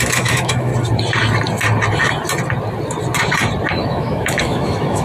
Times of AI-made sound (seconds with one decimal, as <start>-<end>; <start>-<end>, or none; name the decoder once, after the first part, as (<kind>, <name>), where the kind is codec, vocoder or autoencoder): 0.0-0.7 (autoencoder, DAC-VAE); 3.7-5.0